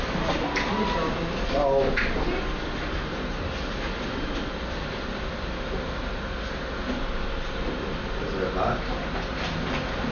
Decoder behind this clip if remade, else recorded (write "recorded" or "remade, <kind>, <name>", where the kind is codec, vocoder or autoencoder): recorded